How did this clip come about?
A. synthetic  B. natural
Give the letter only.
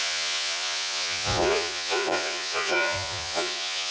A